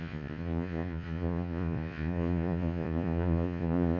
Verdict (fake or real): fake